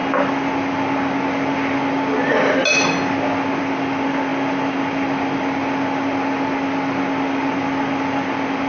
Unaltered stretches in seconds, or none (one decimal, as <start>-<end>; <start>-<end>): 0.0-8.7